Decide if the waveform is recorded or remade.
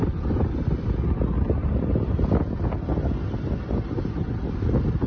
recorded